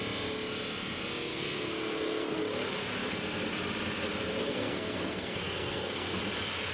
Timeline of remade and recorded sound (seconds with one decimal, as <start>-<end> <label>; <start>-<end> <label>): 0.0-1.3 recorded; 1.3-2.4 remade; 2.4-4.4 recorded; 4.4-6.2 remade; 6.2-6.7 recorded